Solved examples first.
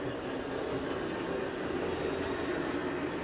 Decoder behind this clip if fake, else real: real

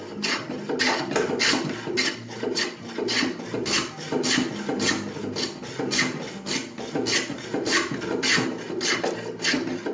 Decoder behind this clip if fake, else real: real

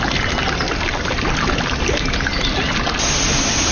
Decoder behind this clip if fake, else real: real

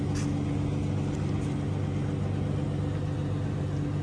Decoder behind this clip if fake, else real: real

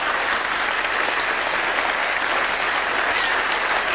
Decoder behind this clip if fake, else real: real